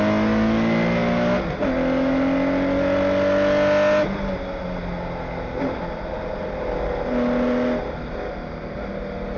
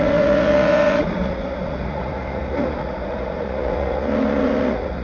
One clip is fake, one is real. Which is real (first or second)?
first